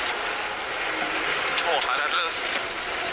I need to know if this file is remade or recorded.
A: recorded